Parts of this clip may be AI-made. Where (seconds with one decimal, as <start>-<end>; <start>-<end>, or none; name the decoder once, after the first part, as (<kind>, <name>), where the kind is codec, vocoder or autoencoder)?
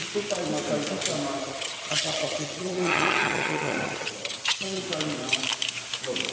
1.4-4.8 (vocoder, HiFi-GAN)